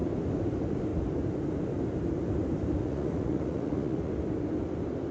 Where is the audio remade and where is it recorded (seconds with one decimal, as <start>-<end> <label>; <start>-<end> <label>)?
0.0-2.8 recorded; 2.8-4.1 remade; 4.1-5.1 recorded